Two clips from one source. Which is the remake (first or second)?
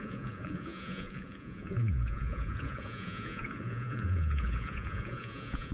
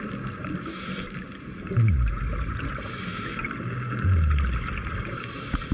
first